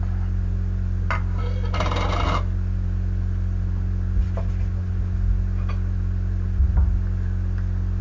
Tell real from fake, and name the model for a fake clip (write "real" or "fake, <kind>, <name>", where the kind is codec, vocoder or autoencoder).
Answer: real